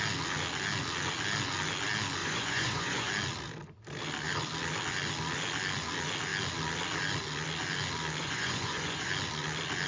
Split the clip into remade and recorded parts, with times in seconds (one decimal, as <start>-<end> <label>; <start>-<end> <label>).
0.0-2.2 recorded; 2.2-3.1 remade; 3.1-8.2 recorded; 8.2-9.1 remade; 9.1-9.9 recorded